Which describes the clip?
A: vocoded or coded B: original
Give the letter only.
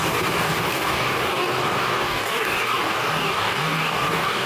A